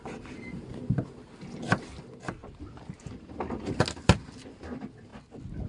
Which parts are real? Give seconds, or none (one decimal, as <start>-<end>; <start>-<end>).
0.0-5.7